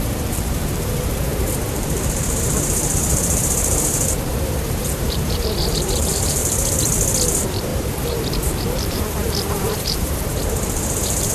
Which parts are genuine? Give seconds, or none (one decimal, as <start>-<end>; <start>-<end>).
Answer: 6.4-7.3